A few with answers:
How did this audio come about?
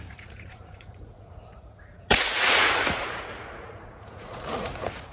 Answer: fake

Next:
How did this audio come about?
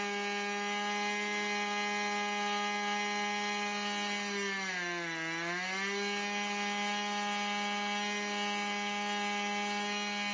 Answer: real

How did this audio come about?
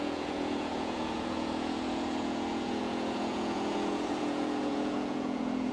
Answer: fake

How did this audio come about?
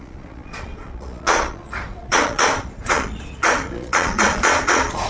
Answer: fake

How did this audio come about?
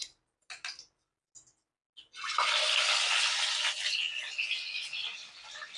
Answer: real